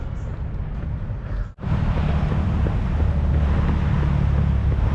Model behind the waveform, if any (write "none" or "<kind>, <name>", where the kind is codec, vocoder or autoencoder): none